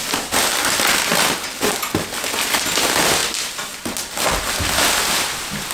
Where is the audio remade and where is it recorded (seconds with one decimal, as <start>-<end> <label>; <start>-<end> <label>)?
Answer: 0.0-5.7 recorded